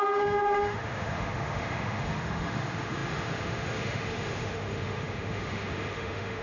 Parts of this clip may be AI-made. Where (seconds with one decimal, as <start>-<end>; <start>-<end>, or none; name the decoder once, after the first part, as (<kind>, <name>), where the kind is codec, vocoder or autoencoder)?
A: 0.0-6.4 (autoencoder, DAC-VAE)